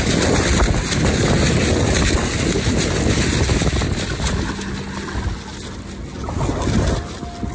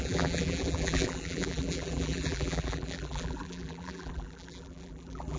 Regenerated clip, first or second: second